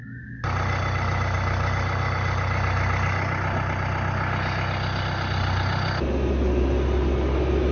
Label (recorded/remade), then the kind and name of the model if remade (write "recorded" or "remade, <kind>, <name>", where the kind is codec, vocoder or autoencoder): recorded